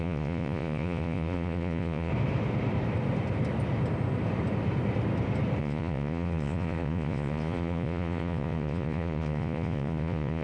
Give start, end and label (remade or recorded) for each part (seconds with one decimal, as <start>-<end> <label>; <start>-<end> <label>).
0.0-2.1 remade; 2.1-5.6 recorded; 5.6-10.4 remade